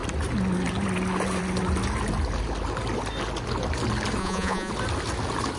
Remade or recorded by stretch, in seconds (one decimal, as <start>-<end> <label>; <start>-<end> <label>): 0.0-4.2 recorded; 4.2-4.7 remade; 4.7-5.6 recorded